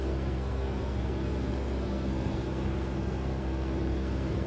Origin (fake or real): fake